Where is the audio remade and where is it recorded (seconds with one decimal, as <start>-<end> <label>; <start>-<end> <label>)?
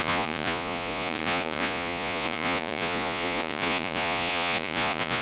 0.0-5.2 remade